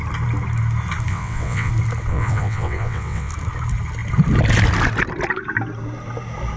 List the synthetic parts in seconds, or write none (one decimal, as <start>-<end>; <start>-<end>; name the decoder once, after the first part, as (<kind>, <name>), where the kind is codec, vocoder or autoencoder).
1.1-1.7 (vocoder, WaveNeXt); 2.1-3.3